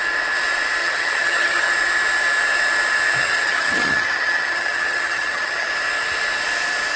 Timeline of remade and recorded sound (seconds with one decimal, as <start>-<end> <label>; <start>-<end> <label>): 0.0-0.8 recorded; 0.8-1.7 remade; 1.7-3.2 recorded; 3.2-5.7 remade; 5.7-7.0 recorded